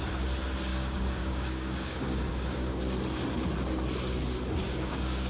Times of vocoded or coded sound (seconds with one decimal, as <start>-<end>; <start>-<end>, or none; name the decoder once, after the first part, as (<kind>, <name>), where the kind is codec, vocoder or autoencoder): 0.7-2.8 (codec, DAC); 4.6-5.3